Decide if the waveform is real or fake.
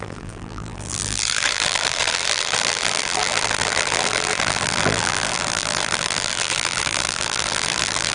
fake